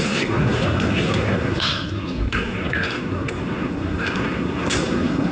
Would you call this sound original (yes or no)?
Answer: no